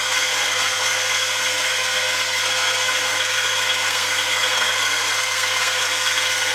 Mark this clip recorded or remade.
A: remade